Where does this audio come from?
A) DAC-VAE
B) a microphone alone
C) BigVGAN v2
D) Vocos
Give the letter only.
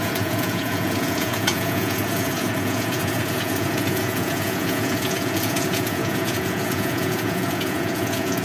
D